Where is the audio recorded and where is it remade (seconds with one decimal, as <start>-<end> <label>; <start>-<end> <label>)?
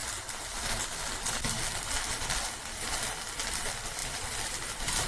0.0-4.0 recorded; 4.0-5.1 remade